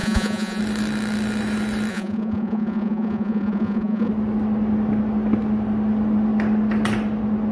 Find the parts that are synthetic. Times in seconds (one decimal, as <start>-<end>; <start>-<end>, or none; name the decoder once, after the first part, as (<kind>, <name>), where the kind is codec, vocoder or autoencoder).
0.0-0.6 (vocoder, Vocos); 1.9-4.1